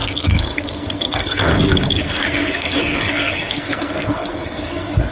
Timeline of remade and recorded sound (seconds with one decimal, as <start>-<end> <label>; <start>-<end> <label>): 0.0-5.1 remade